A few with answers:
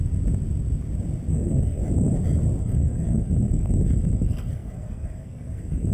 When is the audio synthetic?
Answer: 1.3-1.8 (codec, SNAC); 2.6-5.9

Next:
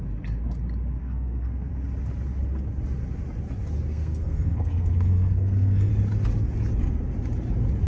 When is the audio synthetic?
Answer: 1.0-1.7 (codec, SNAC); 3.9-5.9